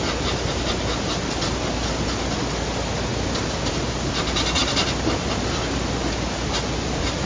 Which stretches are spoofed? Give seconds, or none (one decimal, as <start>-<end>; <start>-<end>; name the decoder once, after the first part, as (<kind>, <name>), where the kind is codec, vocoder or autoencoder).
4.6-5.3 (vocoder, BigVGAN v2)